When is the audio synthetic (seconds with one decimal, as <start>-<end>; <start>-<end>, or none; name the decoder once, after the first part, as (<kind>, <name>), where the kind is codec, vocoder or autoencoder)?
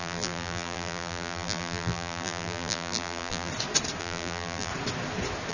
0.0-3.5 (vocoder, BigVGAN v2); 4.0-4.7